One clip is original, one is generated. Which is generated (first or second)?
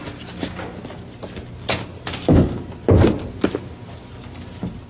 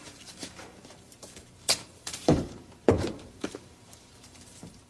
second